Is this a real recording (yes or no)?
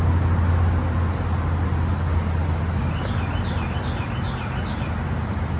yes